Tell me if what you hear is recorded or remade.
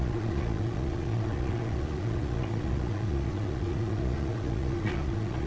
remade